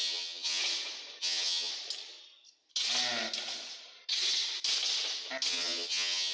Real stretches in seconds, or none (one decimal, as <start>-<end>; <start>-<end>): 0.6-1.2; 1.7-5.5